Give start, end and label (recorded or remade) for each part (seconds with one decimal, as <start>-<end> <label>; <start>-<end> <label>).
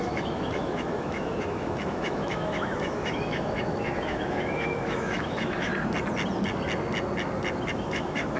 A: 0.0-5.7 remade; 5.7-7.7 recorded; 7.7-8.4 remade